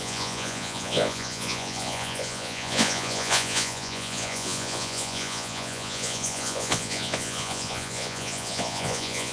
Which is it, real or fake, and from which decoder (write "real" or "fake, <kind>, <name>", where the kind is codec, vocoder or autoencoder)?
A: fake, vocoder, Vocos